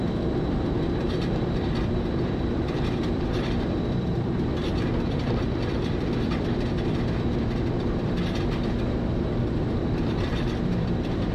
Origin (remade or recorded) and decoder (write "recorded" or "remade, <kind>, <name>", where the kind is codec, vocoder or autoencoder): remade, vocoder, BigVGAN v2